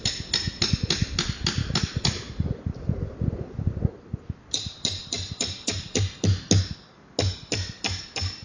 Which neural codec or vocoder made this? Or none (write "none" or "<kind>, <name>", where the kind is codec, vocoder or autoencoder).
none